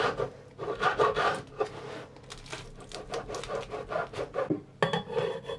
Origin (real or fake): real